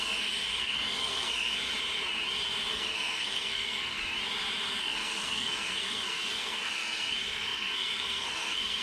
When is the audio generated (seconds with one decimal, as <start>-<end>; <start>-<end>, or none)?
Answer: 0.0-1.7; 2.7-4.0; 4.8-8.8